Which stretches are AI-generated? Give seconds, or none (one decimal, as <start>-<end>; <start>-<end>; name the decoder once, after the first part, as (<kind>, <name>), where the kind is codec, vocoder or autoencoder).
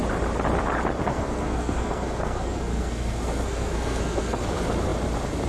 1.1-4.4 (codec, SNAC)